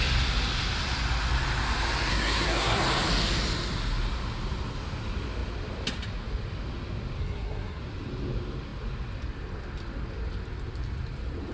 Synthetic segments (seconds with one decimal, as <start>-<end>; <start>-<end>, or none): 2.1-2.8; 7.2-7.8